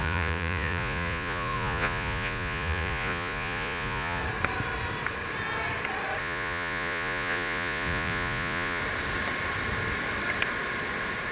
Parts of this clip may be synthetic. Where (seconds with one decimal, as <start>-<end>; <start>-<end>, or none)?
0.0-4.2; 6.2-8.8